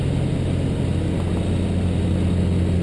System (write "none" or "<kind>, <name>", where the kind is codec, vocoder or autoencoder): none